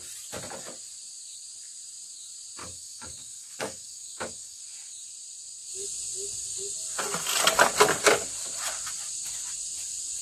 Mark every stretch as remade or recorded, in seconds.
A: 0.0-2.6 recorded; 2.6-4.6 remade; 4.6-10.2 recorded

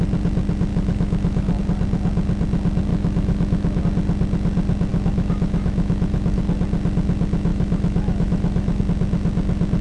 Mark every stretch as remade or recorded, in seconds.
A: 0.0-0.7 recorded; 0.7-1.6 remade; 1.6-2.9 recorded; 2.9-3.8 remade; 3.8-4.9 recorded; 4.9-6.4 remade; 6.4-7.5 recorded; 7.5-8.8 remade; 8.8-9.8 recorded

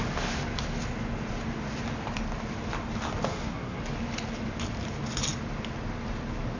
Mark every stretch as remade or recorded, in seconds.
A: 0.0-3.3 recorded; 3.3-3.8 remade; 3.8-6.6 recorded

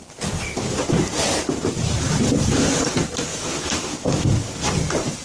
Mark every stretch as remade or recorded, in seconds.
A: 0.0-3.3 recorded; 3.3-4.6 remade; 4.6-5.2 recorded

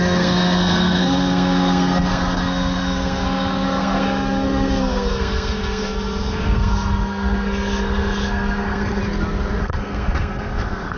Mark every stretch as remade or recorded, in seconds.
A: 0.0-9.0 remade; 9.0-9.6 recorded; 9.6-11.0 remade